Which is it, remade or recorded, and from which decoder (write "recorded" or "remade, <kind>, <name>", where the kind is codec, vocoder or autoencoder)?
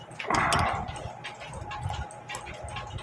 recorded